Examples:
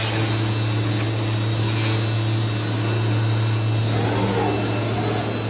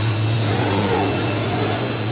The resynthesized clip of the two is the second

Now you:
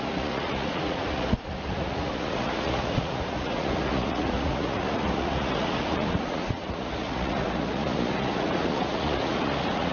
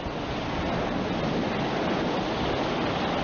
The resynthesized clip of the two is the first